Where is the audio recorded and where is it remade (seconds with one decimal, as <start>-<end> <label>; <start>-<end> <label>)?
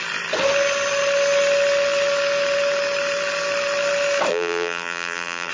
0.0-4.3 recorded; 4.3-5.5 remade